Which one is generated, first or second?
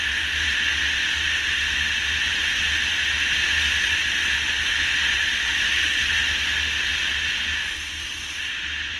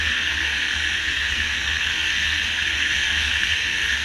second